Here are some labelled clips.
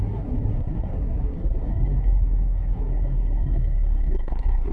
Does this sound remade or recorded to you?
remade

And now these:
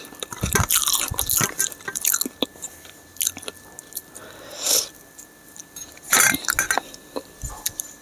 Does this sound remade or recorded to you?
recorded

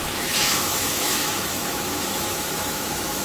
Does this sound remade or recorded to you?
remade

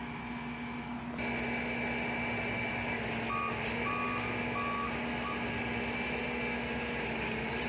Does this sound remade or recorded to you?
recorded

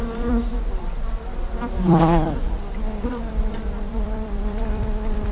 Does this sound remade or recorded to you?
remade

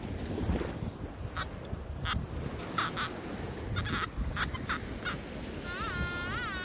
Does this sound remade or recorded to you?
recorded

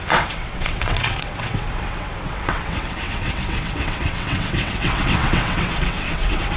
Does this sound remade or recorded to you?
remade